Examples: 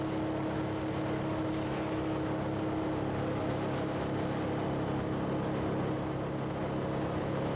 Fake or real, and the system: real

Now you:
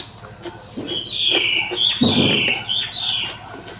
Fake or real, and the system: real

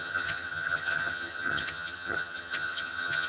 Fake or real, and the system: fake, vocoder, HiFi-GAN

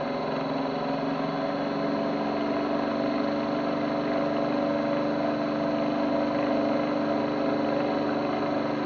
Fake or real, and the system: real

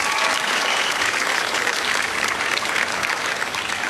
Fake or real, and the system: fake, codec, DAC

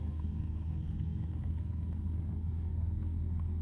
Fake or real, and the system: fake, codec, SNAC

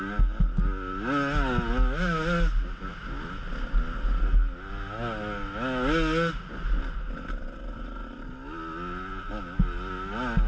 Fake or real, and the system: real